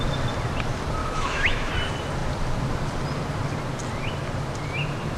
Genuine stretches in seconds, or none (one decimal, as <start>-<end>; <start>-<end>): 0.0-1.0; 1.7-5.2

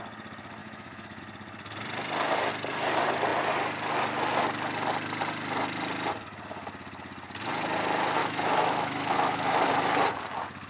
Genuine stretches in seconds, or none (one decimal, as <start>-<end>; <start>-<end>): 0.0-0.6; 1.2-8.2; 9.7-10.7